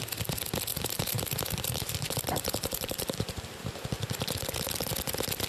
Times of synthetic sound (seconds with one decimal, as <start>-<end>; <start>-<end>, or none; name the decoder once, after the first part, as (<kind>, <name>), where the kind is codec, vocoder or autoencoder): 0.7-3.6 (vocoder, BigVGAN v2)